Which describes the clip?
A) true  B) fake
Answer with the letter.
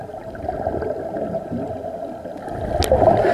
A